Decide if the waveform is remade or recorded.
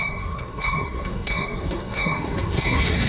remade